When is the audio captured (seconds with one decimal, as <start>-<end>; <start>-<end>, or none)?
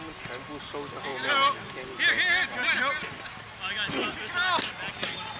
0.0-5.4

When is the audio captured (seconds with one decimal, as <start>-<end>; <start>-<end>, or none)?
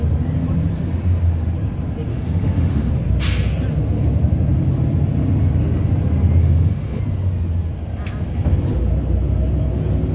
0.0-2.1; 2.9-6.4; 7.0-10.1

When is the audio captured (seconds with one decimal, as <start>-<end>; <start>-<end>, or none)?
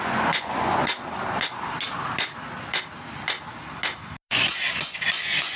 0.9-4.3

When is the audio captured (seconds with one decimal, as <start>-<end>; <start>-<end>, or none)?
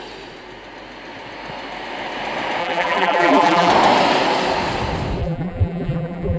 0.0-2.6; 3.7-5.2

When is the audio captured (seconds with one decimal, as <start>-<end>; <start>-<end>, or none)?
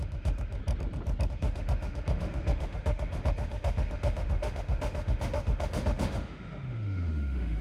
0.6-1.3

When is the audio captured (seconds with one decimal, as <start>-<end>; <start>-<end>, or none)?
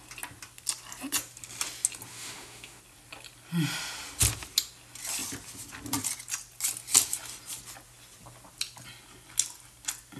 0.0-2.1; 2.8-10.2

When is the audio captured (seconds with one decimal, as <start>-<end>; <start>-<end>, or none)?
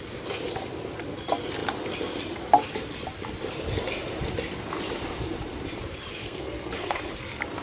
0.0-6.2; 7.1-7.6